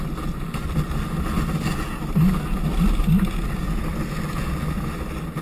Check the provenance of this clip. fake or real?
real